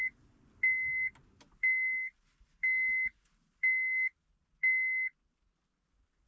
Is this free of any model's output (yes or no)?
yes